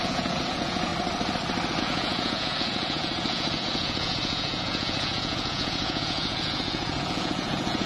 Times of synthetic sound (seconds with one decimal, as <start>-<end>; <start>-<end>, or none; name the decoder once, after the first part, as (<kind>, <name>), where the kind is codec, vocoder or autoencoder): 0.0-0.9 (vocoder, Vocos); 1.8-7.9

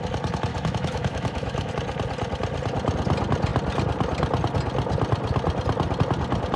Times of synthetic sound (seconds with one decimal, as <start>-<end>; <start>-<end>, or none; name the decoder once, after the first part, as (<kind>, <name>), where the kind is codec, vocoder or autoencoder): 0.5-1.7 (autoencoder, DAC-VAE)

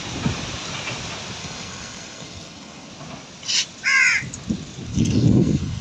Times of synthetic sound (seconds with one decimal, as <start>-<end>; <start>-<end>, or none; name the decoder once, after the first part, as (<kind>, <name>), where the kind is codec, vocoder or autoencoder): 1.4-2.9 (codec, SNAC); 4.9-5.8

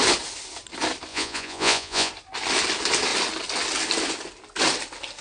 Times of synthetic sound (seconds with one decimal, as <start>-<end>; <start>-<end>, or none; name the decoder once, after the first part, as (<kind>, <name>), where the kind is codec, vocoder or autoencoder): 1.1-2.1 (vocoder, Vocos)

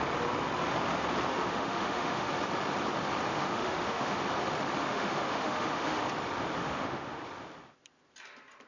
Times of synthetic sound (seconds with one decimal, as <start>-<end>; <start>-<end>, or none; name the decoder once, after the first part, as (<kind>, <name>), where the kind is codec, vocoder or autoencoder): 1.3-2.3 (autoencoder, DAC-VAE); 3.3-4.2; 4.8-6.0; 6.6-7.2

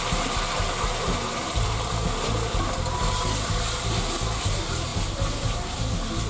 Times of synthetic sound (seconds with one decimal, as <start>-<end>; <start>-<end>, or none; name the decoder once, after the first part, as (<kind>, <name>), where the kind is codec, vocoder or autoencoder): none

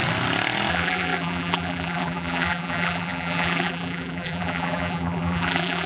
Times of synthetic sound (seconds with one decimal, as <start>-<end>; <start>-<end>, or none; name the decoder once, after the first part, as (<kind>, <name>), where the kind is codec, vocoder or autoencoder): 0.7-5.9 (vocoder, BigVGAN v2)